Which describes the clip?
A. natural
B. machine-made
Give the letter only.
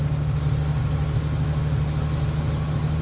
A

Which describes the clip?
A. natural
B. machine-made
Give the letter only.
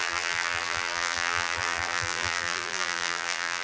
B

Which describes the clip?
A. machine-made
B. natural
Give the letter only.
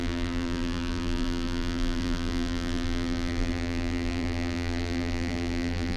A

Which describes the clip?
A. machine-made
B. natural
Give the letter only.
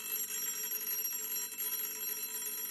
B